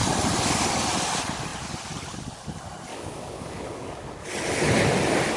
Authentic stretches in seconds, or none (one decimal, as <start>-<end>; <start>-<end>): 0.0-2.9; 4.3-5.4